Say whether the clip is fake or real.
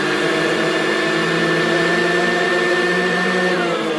fake